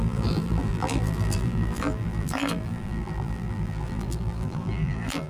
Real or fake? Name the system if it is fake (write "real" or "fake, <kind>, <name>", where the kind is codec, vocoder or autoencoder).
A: fake, vocoder, BigVGAN v2